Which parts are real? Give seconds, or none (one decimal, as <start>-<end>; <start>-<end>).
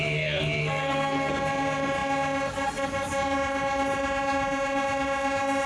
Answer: 0.0-0.6; 1.3-5.7